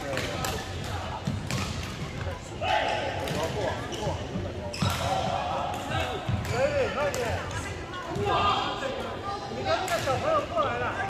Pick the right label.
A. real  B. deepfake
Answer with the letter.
A